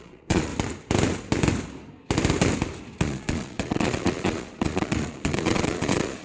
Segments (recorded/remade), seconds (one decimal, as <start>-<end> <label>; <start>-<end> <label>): 0.0-0.5 remade; 0.5-3.0 recorded; 3.0-6.2 remade